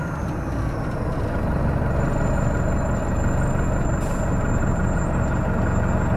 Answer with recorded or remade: recorded